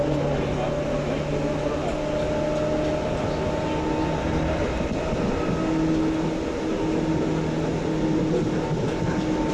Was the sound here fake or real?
real